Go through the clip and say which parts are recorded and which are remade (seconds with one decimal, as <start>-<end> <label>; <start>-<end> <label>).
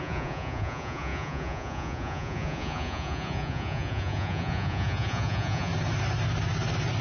0.0-5.7 remade; 5.7-7.0 recorded